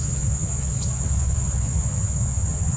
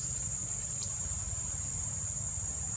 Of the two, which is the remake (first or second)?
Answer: first